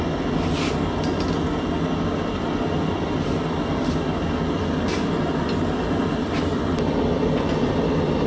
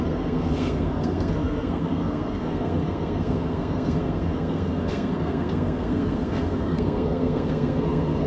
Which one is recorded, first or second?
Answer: first